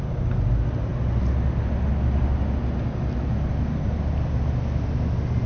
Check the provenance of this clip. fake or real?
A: real